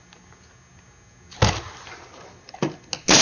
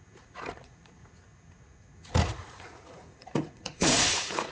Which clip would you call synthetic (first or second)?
second